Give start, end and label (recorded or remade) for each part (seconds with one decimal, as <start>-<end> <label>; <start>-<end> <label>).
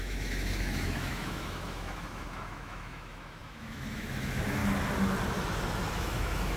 0.0-4.6 remade; 4.6-5.9 recorded; 5.9-6.6 remade